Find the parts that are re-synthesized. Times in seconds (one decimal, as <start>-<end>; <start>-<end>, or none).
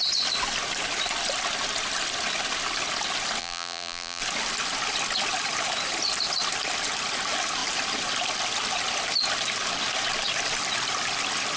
3.4-4.2